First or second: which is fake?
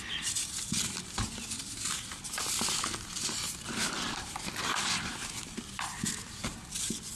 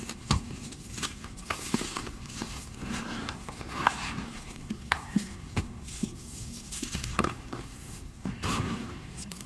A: second